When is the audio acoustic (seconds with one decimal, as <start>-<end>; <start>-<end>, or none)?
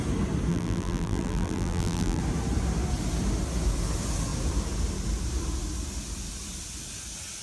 0.0-0.5; 2.2-7.4